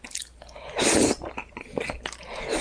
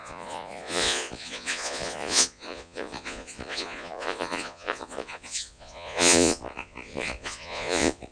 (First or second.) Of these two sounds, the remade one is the second